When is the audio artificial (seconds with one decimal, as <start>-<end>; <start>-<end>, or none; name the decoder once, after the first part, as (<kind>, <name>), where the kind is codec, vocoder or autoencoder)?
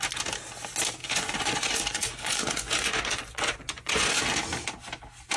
1.0-4.2 (vocoder, Vocos)